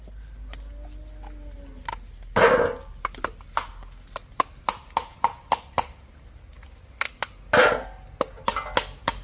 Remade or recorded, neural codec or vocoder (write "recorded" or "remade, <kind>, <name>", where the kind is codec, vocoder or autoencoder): recorded